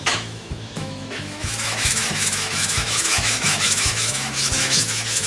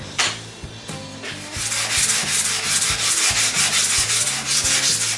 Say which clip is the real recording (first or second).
second